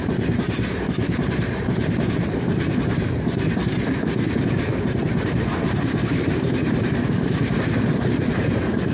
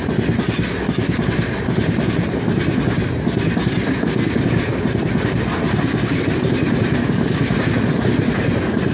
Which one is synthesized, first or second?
first